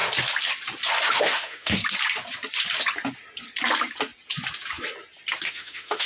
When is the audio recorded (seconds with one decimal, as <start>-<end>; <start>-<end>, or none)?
0.0-1.0; 1.8-5.5